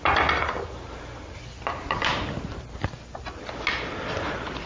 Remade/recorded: recorded